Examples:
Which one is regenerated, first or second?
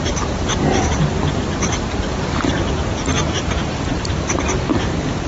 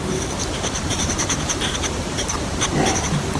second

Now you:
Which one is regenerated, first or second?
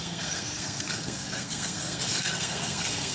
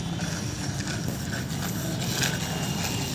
first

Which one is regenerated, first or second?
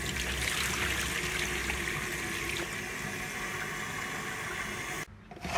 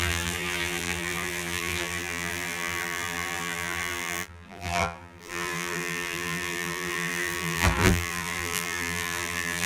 second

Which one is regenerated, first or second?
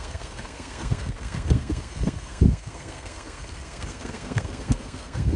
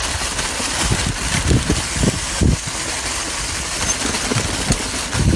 first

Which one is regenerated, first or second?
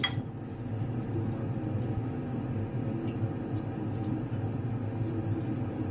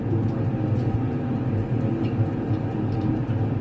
second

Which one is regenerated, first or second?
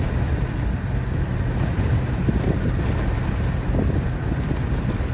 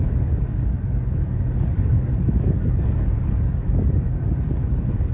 second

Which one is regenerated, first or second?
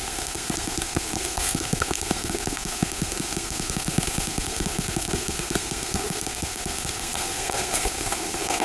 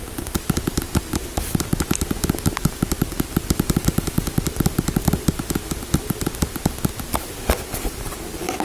first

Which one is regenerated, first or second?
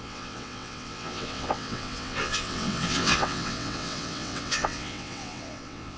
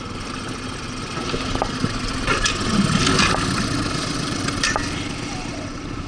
first